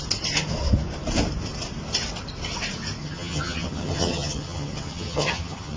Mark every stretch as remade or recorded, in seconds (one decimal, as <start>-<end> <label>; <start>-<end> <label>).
0.0-3.0 recorded; 3.0-5.8 remade